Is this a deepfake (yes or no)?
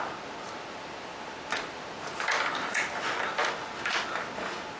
no